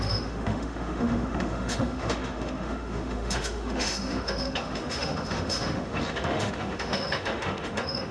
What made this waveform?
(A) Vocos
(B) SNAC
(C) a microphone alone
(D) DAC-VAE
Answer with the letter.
D